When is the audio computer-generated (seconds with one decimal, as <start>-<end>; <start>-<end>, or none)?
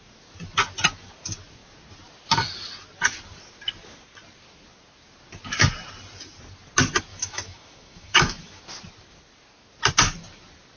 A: 7.1-8.6